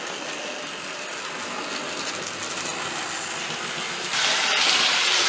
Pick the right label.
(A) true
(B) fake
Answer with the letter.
A